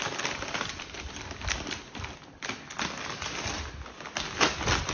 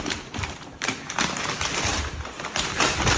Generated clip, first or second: second